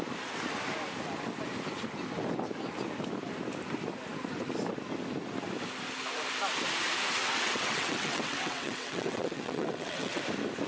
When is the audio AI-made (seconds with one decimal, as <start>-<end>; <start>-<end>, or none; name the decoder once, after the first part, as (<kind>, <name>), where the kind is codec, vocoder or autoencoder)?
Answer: 7.2-10.2 (vocoder, WaveNeXt)